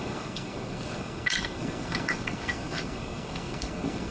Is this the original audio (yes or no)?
no